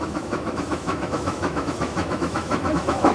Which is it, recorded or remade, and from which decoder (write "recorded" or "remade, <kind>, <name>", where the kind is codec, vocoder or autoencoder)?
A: remade, autoencoder, DAC-VAE